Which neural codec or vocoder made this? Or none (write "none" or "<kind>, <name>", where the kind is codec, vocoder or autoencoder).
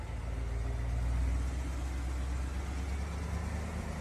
none